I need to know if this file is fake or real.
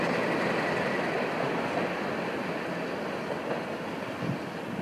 real